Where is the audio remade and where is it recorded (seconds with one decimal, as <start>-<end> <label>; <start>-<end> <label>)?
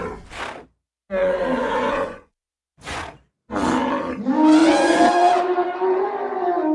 0.0-1.2 recorded; 1.2-3.0 remade; 3.0-4.6 recorded; 4.6-6.1 remade; 6.1-6.7 recorded